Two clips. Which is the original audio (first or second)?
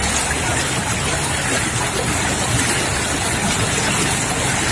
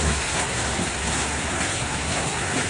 first